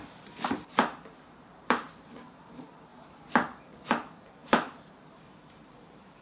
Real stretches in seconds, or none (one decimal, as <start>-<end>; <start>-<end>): 2.9-3.6